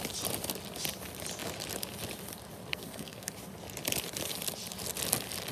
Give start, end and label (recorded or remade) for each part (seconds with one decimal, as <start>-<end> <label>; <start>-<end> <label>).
0.0-2.7 recorded; 2.7-3.3 remade; 3.3-5.5 recorded